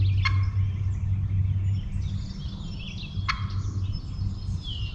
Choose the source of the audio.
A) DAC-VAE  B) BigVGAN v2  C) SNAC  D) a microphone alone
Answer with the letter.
D